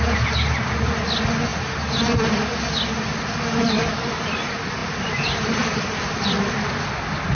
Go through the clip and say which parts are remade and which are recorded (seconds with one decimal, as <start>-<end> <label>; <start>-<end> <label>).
0.0-7.3 recorded

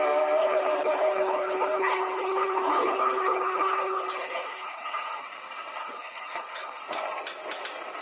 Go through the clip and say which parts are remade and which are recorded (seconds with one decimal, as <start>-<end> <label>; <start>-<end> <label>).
0.0-0.4 recorded; 0.4-5.2 remade; 5.2-5.8 recorded; 5.8-6.8 remade; 6.8-8.0 recorded

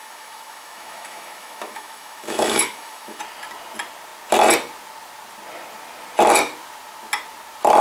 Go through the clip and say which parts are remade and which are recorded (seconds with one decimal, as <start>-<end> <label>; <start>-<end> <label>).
0.0-3.2 remade; 3.2-7.8 recorded

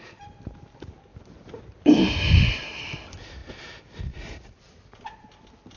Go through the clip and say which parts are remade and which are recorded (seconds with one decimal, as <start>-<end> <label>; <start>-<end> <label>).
0.0-5.8 recorded

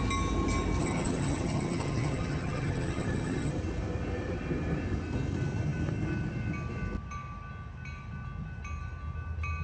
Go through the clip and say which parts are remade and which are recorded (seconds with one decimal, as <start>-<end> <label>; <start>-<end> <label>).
0.0-0.8 recorded; 0.8-3.5 remade; 3.5-9.6 recorded

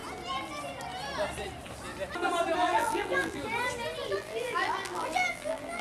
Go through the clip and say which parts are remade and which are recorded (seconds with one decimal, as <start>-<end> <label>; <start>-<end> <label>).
0.0-2.6 recorded; 2.6-3.4 remade; 3.4-4.1 recorded; 4.1-5.8 remade